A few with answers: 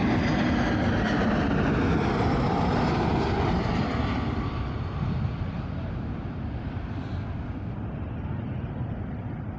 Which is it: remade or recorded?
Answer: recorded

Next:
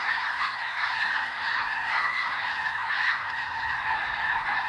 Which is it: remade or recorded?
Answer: remade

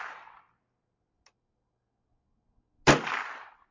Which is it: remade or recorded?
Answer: recorded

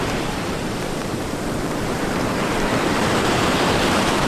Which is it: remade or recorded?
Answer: remade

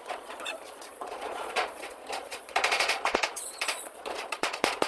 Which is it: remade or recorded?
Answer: remade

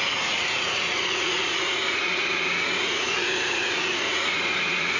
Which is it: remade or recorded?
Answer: remade